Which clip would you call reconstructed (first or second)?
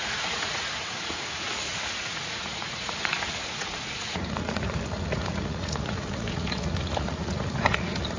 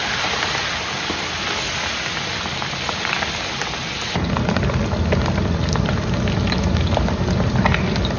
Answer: first